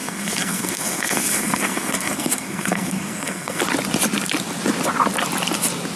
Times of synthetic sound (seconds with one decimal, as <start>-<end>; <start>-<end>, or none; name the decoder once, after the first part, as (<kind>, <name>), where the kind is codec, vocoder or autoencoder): 0.0-3.6 (codec, SNAC)